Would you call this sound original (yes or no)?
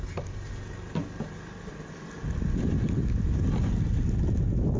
yes